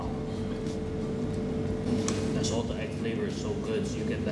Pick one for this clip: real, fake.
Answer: real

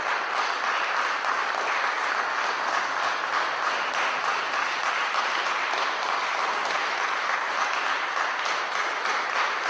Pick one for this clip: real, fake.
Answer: real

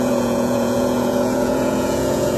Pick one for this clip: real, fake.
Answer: fake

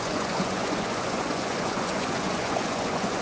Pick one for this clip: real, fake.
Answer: fake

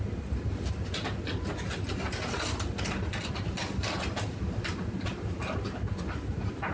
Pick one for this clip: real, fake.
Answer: real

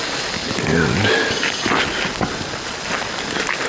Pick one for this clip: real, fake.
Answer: real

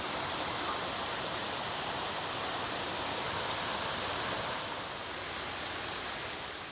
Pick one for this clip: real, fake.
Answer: real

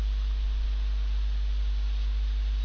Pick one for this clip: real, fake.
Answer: real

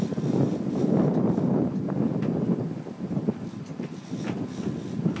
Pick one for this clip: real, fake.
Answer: real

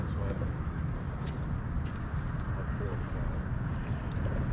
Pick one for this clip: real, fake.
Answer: real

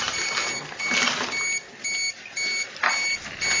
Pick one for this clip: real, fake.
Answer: real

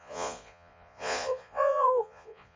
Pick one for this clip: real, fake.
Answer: fake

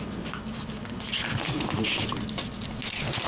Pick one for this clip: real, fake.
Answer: real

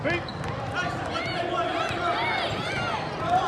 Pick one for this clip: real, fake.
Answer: real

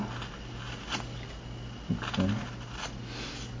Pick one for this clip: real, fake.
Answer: real